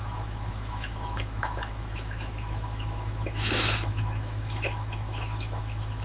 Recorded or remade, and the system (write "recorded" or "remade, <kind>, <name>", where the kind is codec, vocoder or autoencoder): remade, autoencoder, DAC-VAE